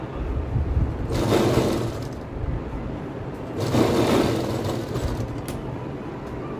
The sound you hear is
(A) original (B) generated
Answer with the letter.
A